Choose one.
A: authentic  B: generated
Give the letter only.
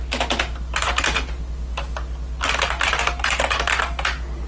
A